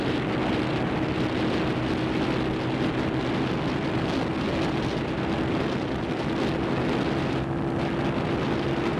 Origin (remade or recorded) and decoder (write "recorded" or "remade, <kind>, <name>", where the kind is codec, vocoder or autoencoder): recorded